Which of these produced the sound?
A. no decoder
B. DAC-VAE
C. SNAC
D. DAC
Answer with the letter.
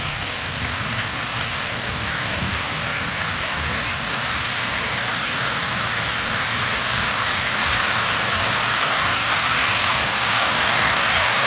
D